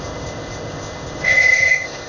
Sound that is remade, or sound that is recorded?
remade